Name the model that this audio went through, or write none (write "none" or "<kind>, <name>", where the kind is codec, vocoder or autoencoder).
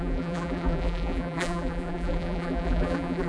vocoder, BigVGAN v2